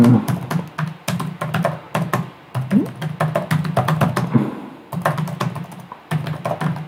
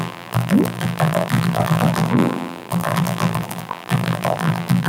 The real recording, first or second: first